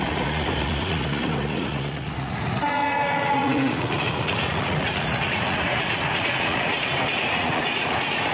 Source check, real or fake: fake